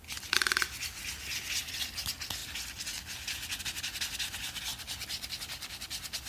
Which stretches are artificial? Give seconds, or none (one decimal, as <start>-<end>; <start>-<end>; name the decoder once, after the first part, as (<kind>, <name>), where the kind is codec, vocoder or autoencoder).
4.7-6.3 (vocoder, BigVGAN v2)